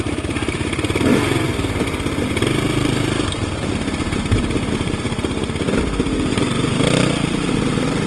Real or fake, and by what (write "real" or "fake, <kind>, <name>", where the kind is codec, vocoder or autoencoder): fake, vocoder, BigVGAN v2